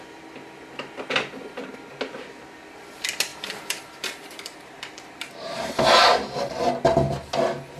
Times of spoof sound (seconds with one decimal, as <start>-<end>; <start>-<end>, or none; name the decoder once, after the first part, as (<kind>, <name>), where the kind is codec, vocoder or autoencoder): 3.3-6.6 (vocoder, BigVGAN v2)